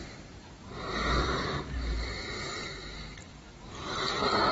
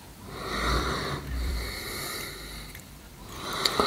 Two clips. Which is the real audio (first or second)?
first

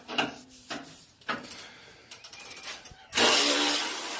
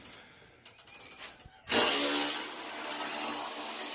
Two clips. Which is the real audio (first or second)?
second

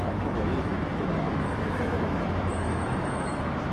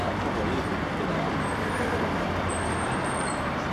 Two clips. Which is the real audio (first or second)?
second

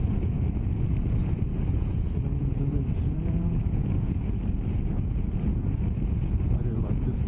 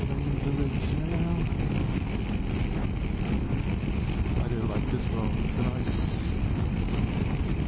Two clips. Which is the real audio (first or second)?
second